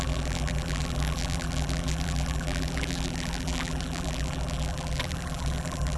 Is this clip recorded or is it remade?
remade